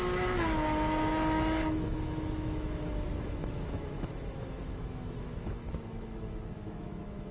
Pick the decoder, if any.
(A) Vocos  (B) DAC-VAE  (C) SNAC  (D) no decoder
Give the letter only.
B